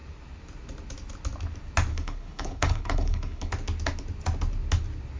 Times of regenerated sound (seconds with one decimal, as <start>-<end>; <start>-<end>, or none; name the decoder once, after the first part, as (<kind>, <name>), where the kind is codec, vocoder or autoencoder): 1.9-3.5 (codec, HILCodec)